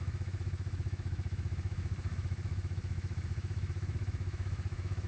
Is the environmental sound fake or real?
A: fake